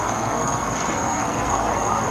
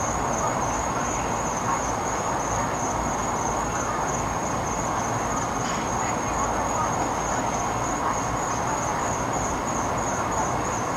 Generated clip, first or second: first